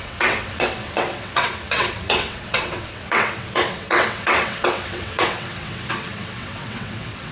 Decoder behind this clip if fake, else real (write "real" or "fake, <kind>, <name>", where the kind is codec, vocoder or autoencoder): fake, vocoder, WaveNeXt